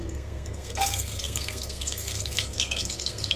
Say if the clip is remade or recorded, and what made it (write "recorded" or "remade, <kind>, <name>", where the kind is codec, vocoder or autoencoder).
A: remade, codec, SNAC